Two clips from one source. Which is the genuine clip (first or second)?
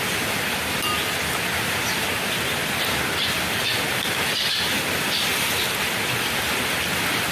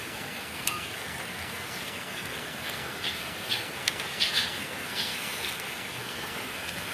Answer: first